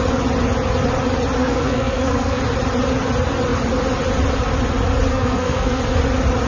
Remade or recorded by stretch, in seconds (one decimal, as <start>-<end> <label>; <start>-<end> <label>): 0.0-1.4 recorded; 1.4-2.4 remade; 2.4-5.1 recorded; 5.1-5.8 remade; 5.8-6.5 recorded